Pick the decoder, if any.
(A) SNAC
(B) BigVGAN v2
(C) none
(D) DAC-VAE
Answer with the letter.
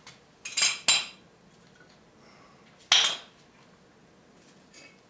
C